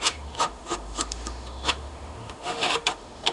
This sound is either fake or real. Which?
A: fake